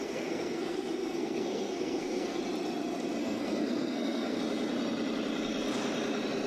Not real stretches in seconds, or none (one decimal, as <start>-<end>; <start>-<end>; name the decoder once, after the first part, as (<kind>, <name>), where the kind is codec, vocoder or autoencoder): 0.0-2.4 (codec, SNAC); 3.2-4.4